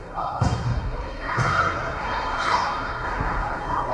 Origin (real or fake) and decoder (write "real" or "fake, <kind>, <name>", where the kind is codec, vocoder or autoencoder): fake, codec, SNAC